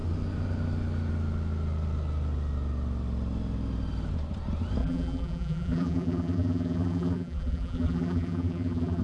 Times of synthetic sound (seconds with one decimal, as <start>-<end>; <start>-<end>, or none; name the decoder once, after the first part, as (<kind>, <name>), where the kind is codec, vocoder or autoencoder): 4.8-9.0 (vocoder, BigVGAN v2)